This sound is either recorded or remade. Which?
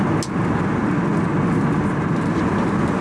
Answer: recorded